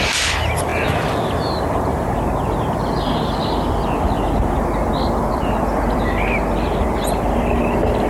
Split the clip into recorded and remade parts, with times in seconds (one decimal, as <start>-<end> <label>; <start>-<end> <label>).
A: 0.0-0.7 remade; 0.7-5.3 recorded; 5.3-6.4 remade; 6.4-7.1 recorded; 7.1-8.1 remade